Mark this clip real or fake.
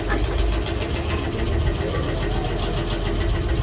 real